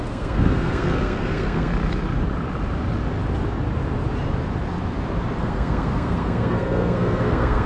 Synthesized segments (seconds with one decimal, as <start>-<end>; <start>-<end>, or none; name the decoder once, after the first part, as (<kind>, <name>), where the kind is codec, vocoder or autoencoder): 0.0-1.7 (codec, SNAC); 5.4-7.7